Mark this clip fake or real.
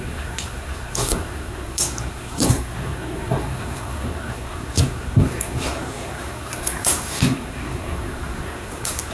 fake